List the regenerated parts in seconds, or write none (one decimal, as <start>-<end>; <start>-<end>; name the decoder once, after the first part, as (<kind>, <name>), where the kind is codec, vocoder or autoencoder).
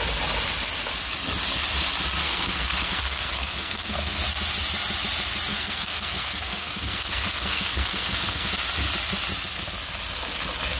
2.2-4.2 (codec, SNAC); 5.5-8.5